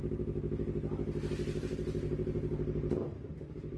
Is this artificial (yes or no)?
no